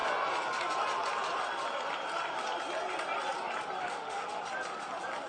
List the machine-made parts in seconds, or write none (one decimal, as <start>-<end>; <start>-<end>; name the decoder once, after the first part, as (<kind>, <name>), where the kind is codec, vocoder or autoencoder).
3.8-4.4 (autoencoder, DAC-VAE)